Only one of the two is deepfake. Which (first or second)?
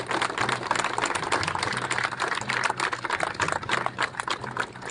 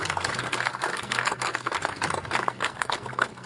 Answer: second